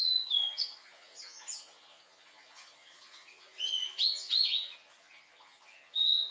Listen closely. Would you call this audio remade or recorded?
remade